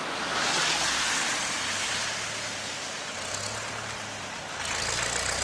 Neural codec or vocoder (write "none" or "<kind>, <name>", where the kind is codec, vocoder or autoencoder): none